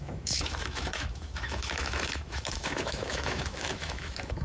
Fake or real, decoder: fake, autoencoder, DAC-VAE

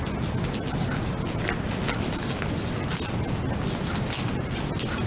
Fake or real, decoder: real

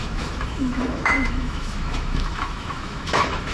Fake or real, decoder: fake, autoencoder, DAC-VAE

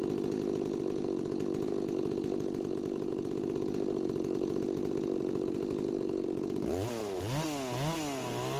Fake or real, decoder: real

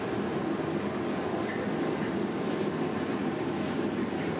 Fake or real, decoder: real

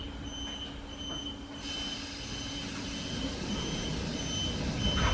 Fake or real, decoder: real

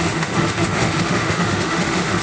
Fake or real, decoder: fake, autoencoder, DAC-VAE